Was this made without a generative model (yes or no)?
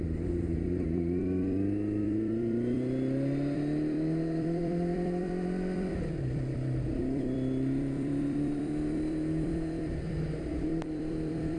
no